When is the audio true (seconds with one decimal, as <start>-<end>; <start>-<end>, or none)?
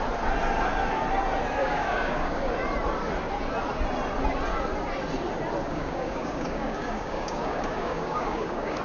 0.0-1.6; 2.5-5.7